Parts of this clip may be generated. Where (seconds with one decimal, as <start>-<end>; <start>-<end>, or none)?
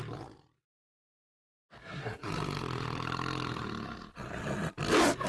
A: 1.8-2.3